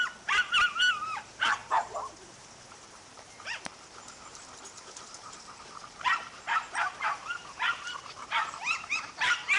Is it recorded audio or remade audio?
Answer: remade